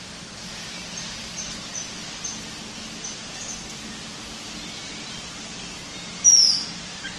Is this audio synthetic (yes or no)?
no